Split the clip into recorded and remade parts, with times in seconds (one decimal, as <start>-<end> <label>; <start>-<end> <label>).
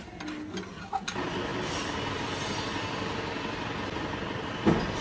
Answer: 0.0-5.0 recorded